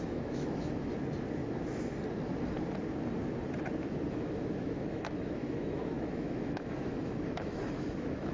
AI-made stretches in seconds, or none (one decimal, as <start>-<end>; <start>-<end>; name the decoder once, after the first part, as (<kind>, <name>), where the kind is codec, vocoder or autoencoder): 0.0-0.9 (autoencoder, DAC-VAE); 4.1-8.3